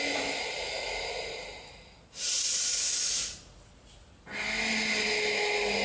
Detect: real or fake real